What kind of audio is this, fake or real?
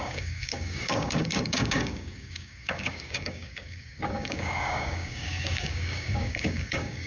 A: fake